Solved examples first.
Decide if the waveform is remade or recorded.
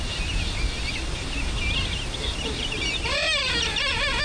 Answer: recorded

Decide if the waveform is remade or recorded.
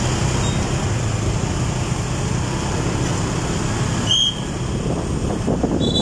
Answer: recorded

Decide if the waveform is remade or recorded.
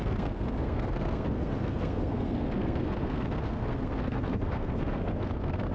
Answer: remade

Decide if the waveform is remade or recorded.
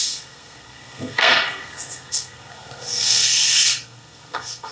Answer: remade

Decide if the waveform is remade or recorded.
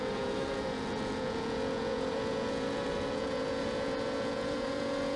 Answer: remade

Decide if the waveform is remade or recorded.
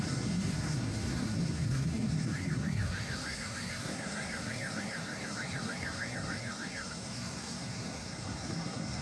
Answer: remade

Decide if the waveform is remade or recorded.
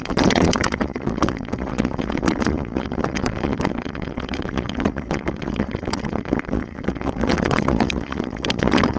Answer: remade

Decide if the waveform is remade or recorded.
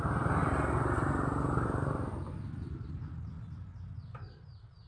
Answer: recorded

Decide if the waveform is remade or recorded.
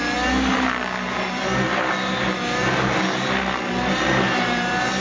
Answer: recorded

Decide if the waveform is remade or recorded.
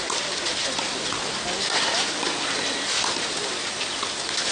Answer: recorded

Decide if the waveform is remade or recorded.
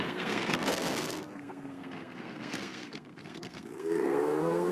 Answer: remade